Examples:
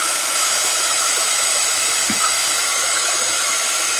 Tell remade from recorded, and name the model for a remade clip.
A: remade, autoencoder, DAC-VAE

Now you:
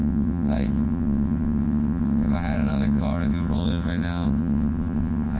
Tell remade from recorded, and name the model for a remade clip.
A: remade, vocoder, WaveNeXt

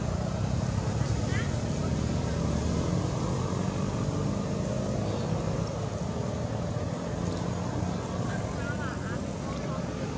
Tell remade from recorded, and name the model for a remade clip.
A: recorded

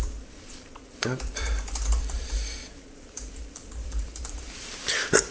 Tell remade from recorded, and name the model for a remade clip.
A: remade, vocoder, BigVGAN v2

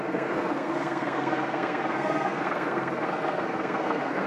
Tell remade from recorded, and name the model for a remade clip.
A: remade, codec, SNAC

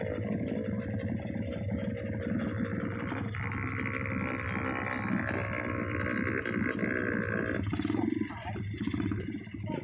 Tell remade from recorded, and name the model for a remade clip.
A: recorded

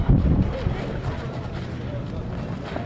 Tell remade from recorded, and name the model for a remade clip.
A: recorded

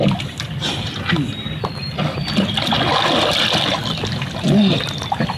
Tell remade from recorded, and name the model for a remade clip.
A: recorded